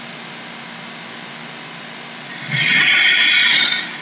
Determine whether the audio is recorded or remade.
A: recorded